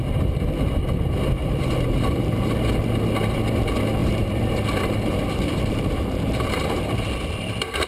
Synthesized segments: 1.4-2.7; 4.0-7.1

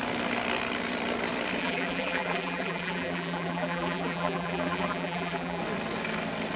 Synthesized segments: 1.6-5.6

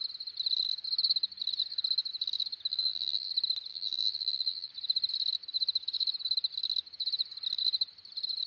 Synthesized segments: 2.7-3.3; 3.7-4.7

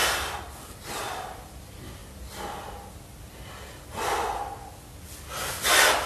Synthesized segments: 0.7-2.0; 5.5-6.1

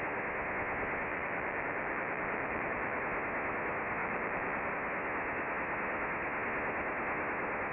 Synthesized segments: 1.1-3.0; 4.0-4.7

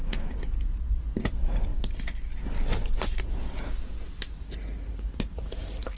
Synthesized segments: 0.0-1.7; 5.3-6.0